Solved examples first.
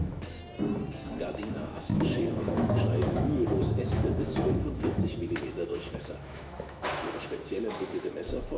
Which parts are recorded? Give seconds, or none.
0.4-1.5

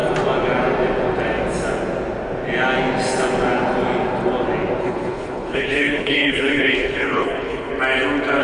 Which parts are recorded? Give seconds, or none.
0.0-4.8; 7.7-8.4

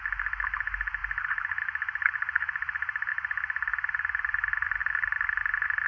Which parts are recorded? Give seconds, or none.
0.0-5.9

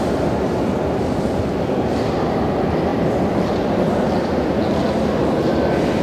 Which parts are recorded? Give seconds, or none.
0.0-2.9; 4.6-6.0

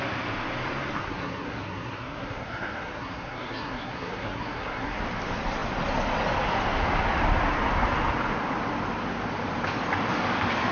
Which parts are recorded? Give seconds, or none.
0.0-1.0; 5.0-10.7

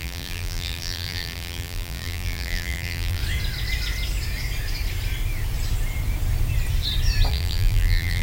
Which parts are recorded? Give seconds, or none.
3.2-7.3